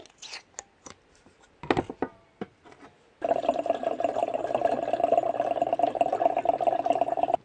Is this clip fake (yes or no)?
no